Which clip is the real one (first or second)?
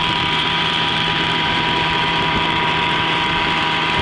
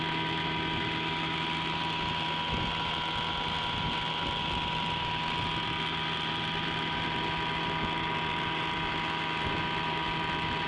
second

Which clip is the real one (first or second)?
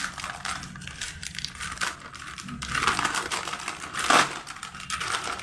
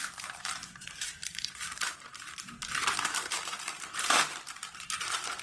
first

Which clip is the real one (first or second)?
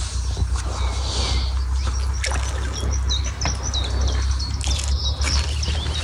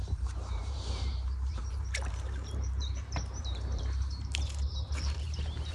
first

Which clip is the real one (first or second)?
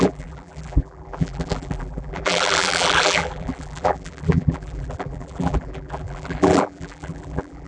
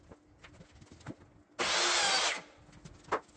second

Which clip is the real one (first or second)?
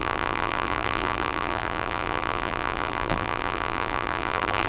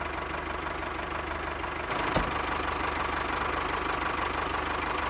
second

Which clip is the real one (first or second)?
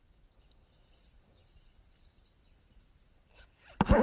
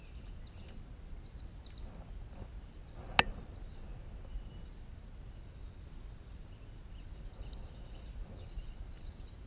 second